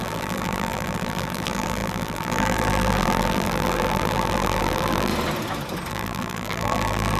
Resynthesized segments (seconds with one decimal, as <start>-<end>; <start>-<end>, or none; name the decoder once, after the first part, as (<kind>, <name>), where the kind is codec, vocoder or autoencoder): 0.0-5.1 (vocoder, BigVGAN v2); 5.9-7.2